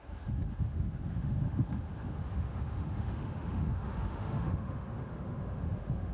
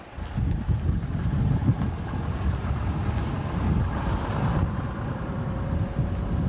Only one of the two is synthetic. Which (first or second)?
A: first